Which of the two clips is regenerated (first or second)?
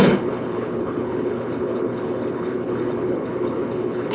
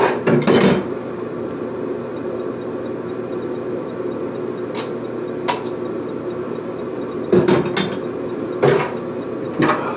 first